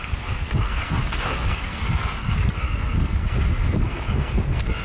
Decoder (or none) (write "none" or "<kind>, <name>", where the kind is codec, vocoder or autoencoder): codec, SNAC